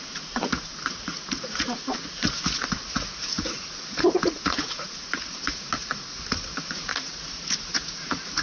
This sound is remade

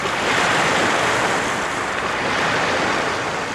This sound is recorded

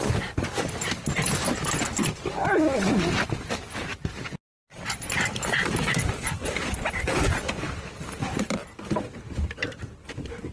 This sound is recorded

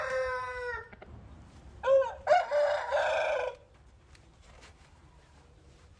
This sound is remade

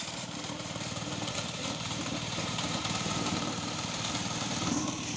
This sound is remade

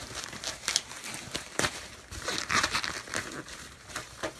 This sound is remade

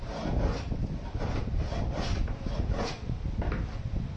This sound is recorded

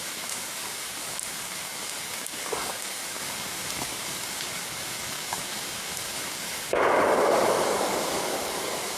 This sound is remade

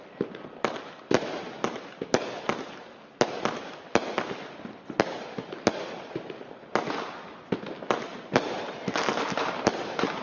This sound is recorded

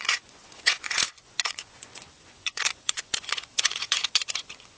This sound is remade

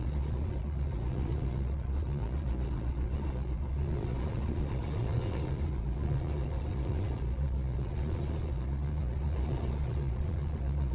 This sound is remade